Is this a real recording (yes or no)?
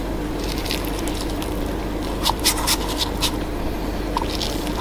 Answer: no